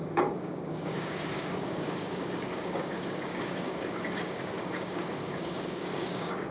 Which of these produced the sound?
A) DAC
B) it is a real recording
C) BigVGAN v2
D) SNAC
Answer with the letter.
A